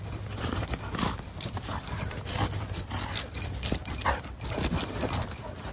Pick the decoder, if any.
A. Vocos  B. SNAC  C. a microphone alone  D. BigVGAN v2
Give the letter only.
D